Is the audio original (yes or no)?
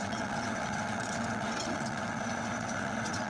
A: no